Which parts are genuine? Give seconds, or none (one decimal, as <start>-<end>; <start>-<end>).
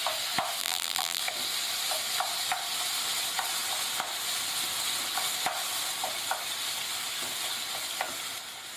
0.0-0.6; 1.2-8.8